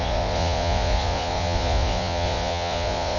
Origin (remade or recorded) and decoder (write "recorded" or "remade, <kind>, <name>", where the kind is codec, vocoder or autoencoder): remade, vocoder, Vocos